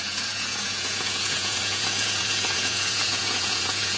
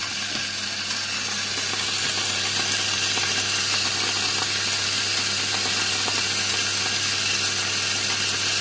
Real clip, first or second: second